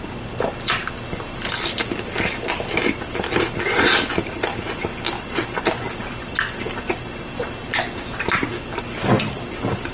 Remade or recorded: recorded